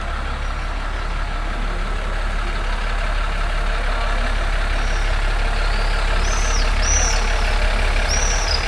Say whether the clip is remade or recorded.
recorded